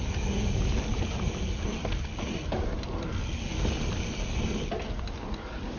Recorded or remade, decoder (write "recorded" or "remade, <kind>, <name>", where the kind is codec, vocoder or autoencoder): recorded